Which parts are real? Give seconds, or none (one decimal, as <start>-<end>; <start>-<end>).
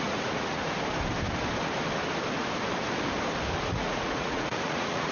0.6-3.7